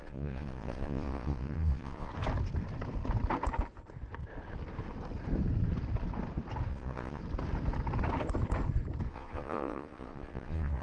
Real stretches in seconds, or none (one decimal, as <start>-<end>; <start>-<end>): 2.1-6.7; 7.2-9.1